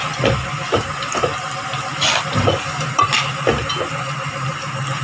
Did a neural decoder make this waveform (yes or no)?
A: yes